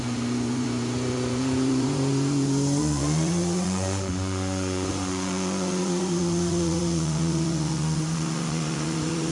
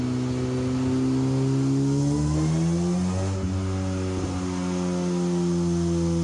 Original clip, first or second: second